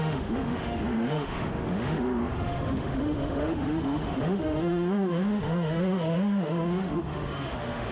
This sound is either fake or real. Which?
fake